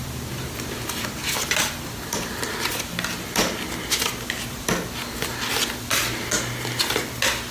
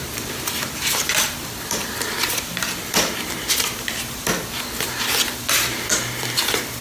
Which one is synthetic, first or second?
second